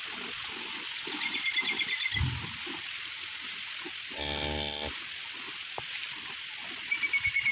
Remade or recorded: recorded